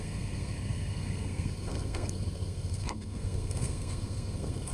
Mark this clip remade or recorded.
remade